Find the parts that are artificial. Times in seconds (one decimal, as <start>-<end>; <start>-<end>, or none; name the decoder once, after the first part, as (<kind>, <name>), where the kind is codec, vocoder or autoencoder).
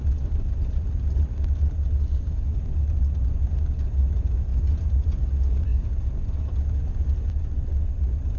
none